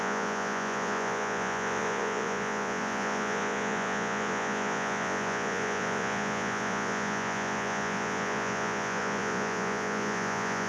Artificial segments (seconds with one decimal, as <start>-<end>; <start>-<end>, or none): 0.0-10.7